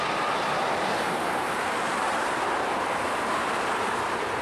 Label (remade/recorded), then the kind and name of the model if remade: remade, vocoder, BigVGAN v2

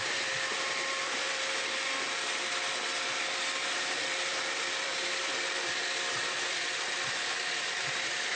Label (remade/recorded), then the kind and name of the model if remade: remade, vocoder, BigVGAN v2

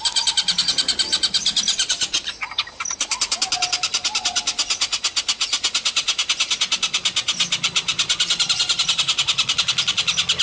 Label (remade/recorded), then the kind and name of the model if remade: recorded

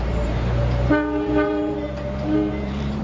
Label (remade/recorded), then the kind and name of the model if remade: remade, vocoder, BigVGAN v2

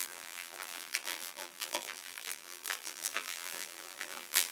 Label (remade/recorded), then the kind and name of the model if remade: remade, vocoder, BigVGAN v2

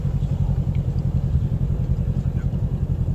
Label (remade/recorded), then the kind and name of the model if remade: recorded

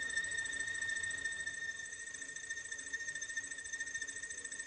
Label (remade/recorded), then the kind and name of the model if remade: recorded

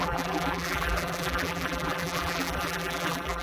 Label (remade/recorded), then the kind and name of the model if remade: remade, vocoder, BigVGAN v2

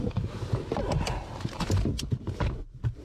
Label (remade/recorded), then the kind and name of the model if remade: recorded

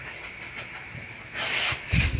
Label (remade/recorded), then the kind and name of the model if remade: remade, vocoder, BigVGAN v2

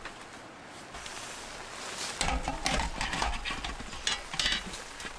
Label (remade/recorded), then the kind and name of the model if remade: recorded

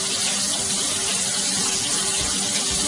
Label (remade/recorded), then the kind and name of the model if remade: recorded